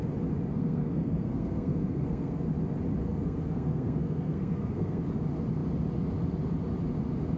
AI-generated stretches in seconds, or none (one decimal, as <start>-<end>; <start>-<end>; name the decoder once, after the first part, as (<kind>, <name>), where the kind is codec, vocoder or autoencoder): 0.5-2.4 (codec, SNAC); 3.0-5.0